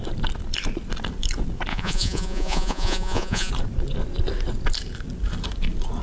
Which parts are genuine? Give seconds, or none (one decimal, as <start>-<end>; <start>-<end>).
0.0-1.7; 3.5-6.0